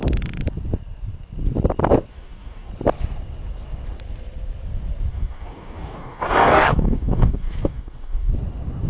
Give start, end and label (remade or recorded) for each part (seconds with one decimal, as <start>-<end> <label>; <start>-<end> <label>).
0.0-2.1 recorded; 2.1-2.7 remade; 2.7-5.1 recorded; 5.1-8.3 remade; 8.3-8.9 recorded